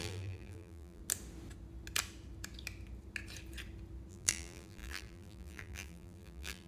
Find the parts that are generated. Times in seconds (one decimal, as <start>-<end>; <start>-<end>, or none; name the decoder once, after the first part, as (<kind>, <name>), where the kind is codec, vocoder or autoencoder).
0.0-1.0 (vocoder, BigVGAN v2); 4.1-6.7

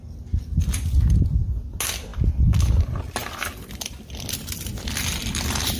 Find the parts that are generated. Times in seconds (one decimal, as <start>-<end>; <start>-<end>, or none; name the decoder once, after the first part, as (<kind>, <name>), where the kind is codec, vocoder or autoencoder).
none

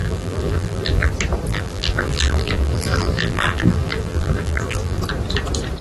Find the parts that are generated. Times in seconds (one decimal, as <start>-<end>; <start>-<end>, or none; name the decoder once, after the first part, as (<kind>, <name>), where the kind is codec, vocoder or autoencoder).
0.0-1.1 (vocoder, BigVGAN v2); 1.5-5.0

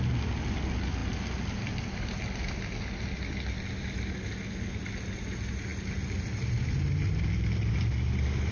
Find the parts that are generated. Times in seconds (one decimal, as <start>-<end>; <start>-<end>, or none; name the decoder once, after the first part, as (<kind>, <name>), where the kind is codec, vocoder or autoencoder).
none

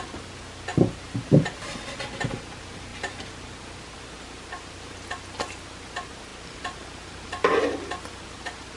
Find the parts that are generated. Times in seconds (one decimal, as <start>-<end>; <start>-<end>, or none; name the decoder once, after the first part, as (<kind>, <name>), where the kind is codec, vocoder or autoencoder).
none

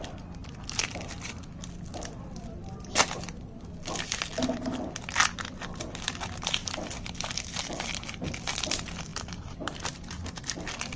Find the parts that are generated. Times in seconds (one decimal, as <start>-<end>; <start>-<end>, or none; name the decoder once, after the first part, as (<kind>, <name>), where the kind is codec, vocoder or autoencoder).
0.4-1.3 (vocoder, BigVGAN v2); 6.6-7.7; 9.1-10.5

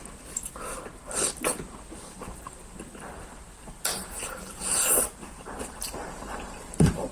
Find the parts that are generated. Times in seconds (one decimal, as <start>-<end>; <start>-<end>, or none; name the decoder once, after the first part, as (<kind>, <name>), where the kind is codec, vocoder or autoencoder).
3.9-7.1 (vocoder, BigVGAN v2)